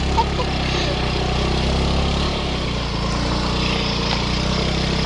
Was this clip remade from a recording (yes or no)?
no